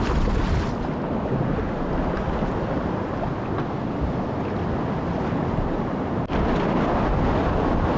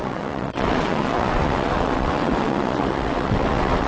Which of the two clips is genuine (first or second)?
first